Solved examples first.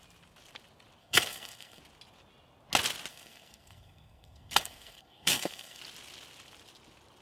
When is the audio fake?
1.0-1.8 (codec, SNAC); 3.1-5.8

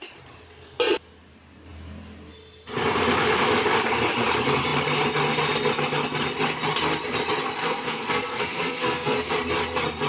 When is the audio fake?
7.6-9.3 (codec, SNAC)

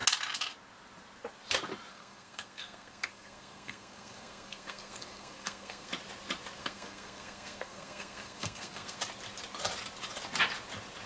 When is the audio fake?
1.9-5.9 (codec, SNAC); 6.6-9.0

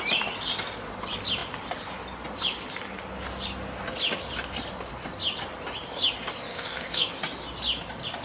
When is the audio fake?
6.5-7.1 (codec, SNAC)

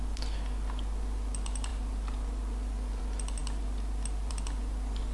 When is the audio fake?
none

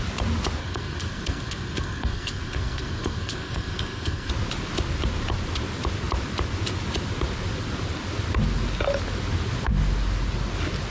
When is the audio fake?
0.6-4.3 (codec, SNAC)